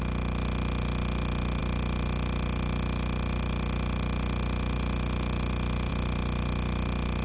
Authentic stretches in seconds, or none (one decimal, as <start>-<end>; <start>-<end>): 0.0-7.2

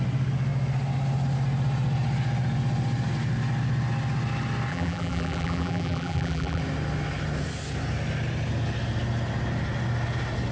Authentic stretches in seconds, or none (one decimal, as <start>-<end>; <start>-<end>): 0.0-4.7; 6.6-10.5

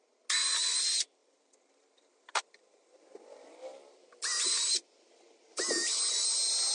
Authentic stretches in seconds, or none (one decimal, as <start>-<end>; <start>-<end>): 0.0-1.2; 5.2-6.7

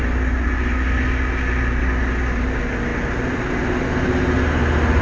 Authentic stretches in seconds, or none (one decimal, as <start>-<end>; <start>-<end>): 0.0-5.0

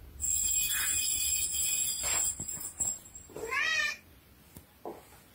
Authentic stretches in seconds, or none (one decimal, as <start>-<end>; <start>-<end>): 0.0-0.4; 3.6-5.3

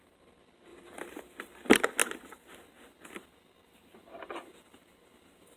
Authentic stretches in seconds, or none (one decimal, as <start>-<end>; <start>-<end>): 0.0-5.6